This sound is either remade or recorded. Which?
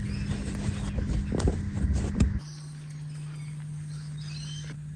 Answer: recorded